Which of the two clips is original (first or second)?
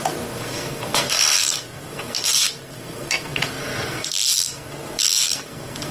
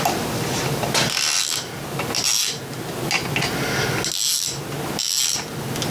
second